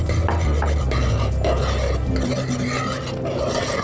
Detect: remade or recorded recorded